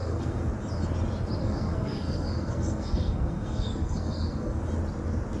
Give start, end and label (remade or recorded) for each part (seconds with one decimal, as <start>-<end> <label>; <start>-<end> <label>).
0.0-0.5 remade; 0.5-1.4 recorded; 1.4-4.6 remade; 4.6-5.4 recorded